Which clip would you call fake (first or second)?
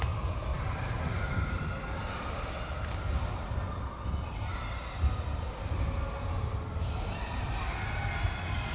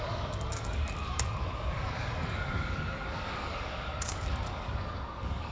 second